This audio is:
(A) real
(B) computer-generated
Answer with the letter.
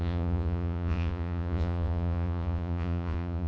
B